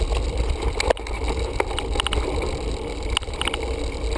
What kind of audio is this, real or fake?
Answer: real